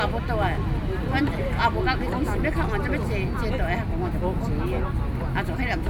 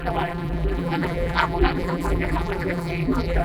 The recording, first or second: first